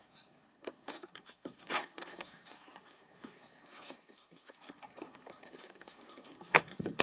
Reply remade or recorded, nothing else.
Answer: remade